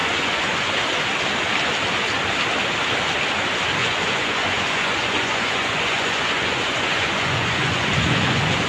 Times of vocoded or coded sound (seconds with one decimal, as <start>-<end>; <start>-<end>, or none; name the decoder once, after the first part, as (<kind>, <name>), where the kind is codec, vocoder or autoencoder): 0.0-0.8 (vocoder, Vocos); 3.8-8.7